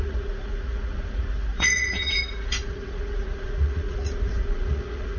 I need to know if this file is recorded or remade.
remade